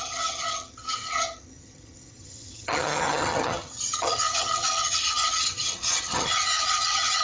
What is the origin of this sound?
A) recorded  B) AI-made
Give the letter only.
B